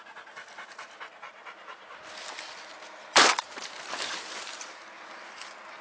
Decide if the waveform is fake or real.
real